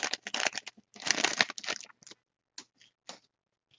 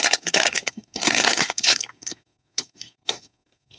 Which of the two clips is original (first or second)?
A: first